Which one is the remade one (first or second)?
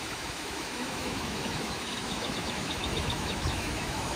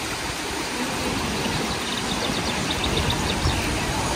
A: first